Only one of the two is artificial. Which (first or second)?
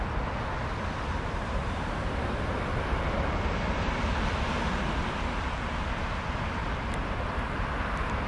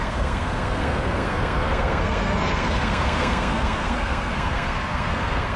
second